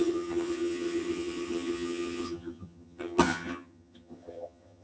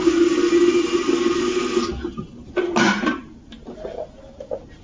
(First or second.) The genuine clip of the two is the second